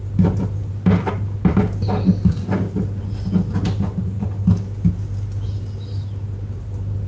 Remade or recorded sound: recorded